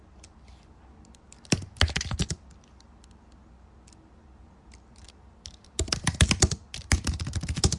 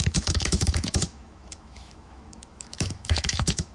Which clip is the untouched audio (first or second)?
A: first